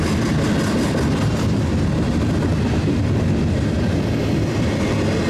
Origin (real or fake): real